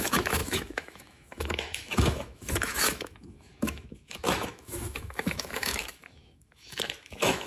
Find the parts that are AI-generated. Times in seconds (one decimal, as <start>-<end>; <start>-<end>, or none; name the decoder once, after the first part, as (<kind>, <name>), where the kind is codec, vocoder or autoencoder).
0.0-7.5 (autoencoder, DAC-VAE)